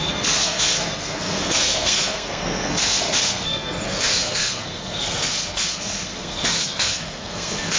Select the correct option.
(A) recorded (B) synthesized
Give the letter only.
B